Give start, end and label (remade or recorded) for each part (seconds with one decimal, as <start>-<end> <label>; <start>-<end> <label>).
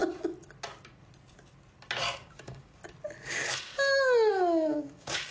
0.0-2.2 recorded; 2.2-2.8 remade; 2.8-3.3 recorded; 3.3-3.7 remade; 3.7-4.3 recorded; 4.3-5.3 remade